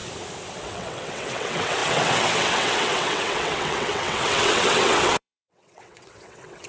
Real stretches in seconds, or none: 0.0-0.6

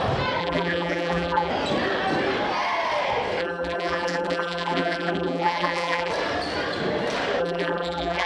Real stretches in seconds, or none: 0.0-0.4; 1.5-3.4; 6.1-7.4

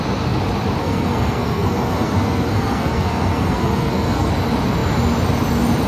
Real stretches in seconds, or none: 0.0-0.8; 4.3-5.9

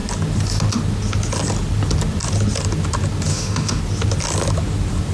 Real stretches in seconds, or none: 0.0-3.3; 3.8-5.1

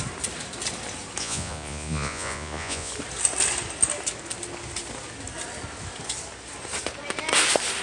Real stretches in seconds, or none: 0.0-1.2; 2.9-7.8